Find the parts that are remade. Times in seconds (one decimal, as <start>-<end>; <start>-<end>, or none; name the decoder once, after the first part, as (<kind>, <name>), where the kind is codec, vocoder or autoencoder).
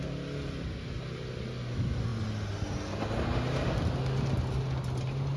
none